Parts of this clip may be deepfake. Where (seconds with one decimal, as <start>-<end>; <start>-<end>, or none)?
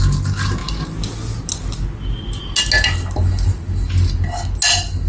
none